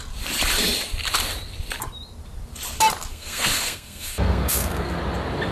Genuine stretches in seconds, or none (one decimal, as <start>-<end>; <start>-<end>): 0.0-3.1; 5.0-5.5